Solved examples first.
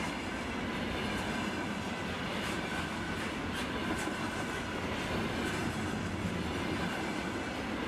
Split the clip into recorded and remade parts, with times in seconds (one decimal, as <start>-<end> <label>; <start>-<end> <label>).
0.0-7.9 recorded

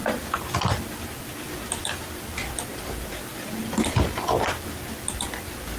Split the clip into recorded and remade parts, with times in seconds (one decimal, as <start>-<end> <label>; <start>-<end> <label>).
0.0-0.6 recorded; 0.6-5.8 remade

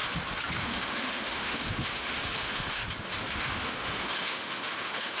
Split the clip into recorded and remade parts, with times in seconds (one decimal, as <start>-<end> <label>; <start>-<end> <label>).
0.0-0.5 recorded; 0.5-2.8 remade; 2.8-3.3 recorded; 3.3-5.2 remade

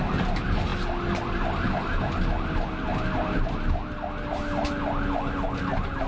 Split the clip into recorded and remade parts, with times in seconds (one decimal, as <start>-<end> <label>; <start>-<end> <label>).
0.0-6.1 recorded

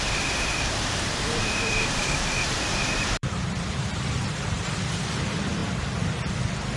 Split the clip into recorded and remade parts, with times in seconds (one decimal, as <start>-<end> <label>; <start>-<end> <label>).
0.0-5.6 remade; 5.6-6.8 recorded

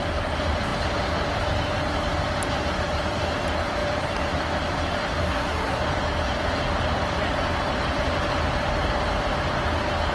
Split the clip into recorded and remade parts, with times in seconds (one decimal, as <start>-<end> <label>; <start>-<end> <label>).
0.0-5.2 recorded; 5.2-5.8 remade; 5.8-10.1 recorded

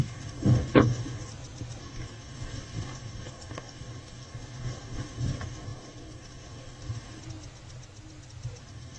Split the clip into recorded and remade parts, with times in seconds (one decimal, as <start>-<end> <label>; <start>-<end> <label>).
0.0-1.3 remade; 1.3-1.8 recorded; 1.8-7.2 remade; 7.2-8.6 recorded; 8.6-9.0 remade

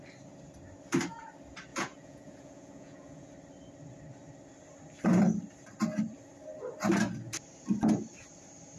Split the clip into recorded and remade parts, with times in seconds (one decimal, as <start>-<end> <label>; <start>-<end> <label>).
0.0-1.7 recorded; 1.7-3.3 remade; 3.3-8.8 recorded